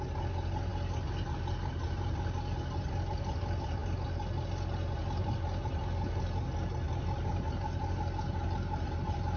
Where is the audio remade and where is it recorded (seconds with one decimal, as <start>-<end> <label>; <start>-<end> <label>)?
0.0-9.4 recorded